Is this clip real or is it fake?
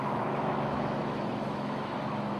fake